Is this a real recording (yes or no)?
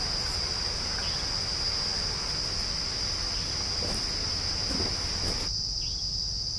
yes